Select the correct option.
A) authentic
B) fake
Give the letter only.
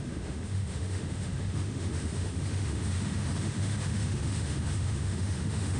B